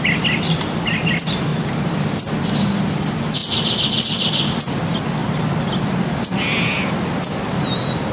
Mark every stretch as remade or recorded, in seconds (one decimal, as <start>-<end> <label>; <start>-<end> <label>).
0.0-8.1 recorded